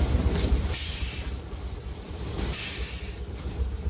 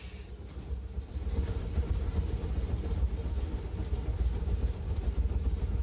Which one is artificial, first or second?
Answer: first